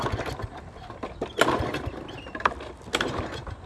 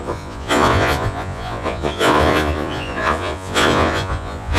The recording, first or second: first